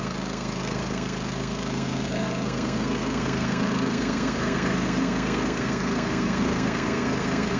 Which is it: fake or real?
fake